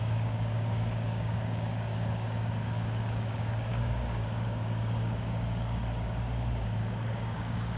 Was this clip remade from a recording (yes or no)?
yes